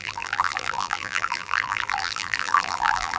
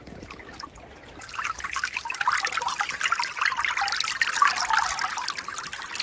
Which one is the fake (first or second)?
first